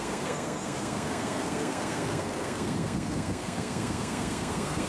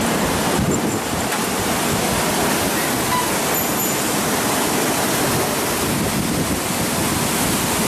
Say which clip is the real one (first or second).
second